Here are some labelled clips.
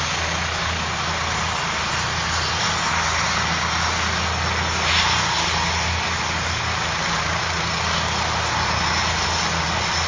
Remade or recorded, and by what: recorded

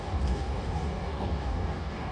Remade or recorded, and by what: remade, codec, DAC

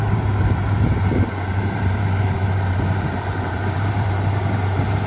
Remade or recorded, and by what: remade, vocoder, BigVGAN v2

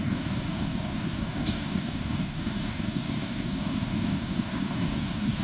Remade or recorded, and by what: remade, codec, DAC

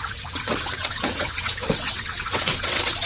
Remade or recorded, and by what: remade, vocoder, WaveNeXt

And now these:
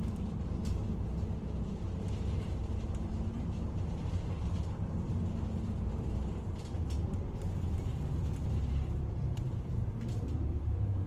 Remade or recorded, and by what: remade, vocoder, BigVGAN v2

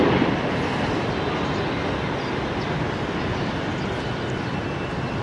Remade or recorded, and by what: recorded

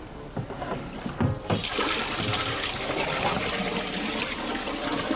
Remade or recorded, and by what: recorded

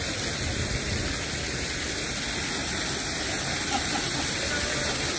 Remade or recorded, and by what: recorded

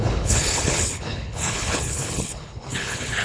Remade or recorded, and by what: remade, codec, HILCodec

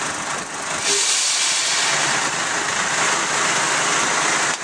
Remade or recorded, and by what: recorded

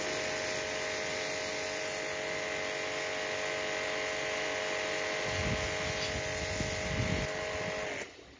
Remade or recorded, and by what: recorded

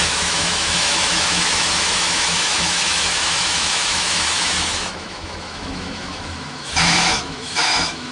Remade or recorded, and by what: remade, autoencoder, DAC-VAE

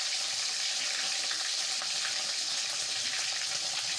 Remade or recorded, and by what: recorded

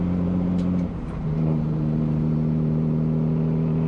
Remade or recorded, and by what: remade, vocoder, BigVGAN v2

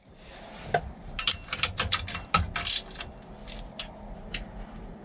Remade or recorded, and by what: recorded